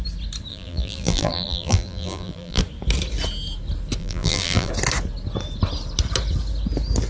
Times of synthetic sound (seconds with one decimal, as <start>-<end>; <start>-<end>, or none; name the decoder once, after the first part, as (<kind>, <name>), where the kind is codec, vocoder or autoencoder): 0.5-2.6 (vocoder, BigVGAN v2); 4.0-4.7

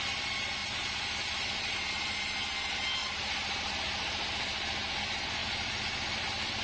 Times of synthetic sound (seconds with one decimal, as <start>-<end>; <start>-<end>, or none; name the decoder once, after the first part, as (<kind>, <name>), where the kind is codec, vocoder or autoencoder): 5.4-6.6 (vocoder, BigVGAN v2)

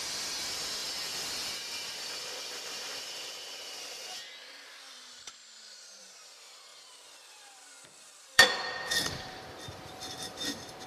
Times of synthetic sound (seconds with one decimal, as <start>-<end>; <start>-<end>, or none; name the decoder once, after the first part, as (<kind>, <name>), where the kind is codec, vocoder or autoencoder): 0.0-5.4 (vocoder, BigVGAN v2); 6.0-10.9

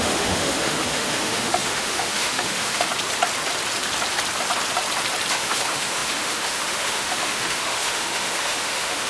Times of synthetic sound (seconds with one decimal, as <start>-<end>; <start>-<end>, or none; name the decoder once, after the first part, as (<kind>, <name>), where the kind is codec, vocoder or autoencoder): 0.0-2.9 (autoencoder, DAC-VAE); 5.3-9.1

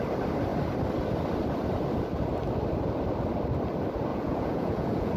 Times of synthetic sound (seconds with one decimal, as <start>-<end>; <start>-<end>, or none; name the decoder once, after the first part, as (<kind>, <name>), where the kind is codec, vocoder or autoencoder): 4.1-5.2 (vocoder, Vocos)

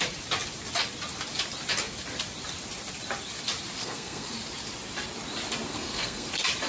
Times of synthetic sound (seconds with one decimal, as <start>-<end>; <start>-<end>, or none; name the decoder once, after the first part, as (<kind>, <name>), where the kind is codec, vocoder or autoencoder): 3.8-4.3 (codec, SNAC); 5.7-6.3

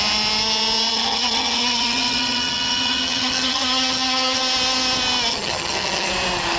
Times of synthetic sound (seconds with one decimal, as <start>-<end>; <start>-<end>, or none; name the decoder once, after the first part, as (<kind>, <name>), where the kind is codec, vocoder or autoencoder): 0.9-4.4 (vocoder, HiFi-GAN); 5.3-6.1